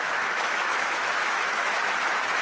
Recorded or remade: remade